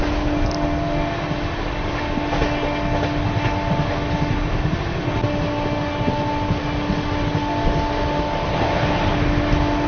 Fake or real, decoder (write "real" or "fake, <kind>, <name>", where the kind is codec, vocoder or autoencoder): real